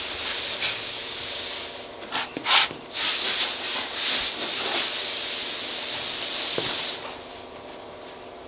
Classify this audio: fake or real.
real